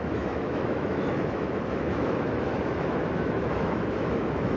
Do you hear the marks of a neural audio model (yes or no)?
yes